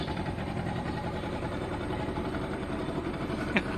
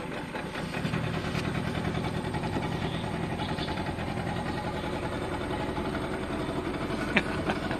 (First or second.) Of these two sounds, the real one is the second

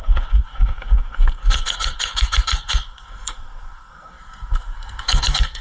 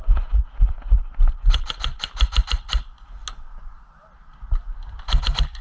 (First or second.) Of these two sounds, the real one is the second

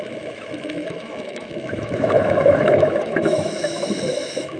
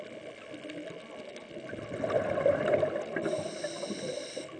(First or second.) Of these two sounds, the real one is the second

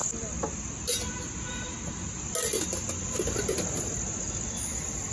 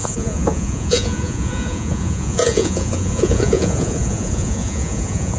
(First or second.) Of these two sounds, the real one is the first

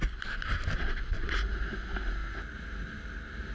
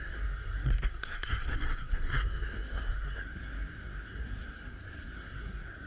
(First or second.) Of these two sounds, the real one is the first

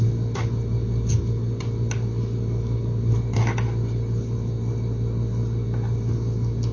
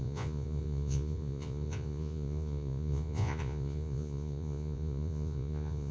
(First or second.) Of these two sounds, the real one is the first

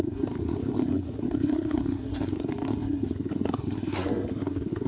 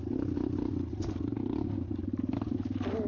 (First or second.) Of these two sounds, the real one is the second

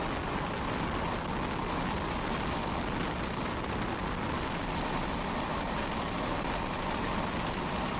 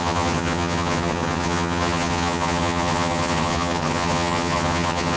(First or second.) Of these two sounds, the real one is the first